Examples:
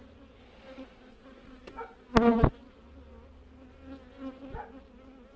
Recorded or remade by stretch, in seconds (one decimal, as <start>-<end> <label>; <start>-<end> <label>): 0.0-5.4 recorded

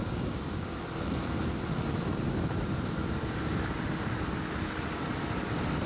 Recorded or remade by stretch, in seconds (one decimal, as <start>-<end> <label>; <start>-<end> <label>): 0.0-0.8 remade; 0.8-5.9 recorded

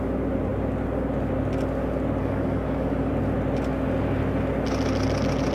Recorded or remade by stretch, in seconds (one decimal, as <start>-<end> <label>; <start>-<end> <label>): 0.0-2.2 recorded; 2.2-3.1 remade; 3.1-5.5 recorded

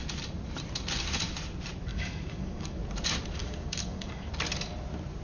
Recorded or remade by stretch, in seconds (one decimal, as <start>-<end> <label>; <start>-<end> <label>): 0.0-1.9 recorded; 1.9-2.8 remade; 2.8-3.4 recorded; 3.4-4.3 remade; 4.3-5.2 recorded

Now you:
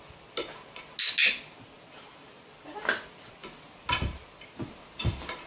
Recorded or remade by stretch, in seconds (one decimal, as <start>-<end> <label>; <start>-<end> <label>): 0.0-5.5 recorded